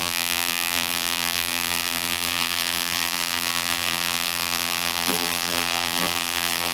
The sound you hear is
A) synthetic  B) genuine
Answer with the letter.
A